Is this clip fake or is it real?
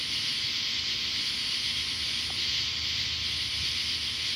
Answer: real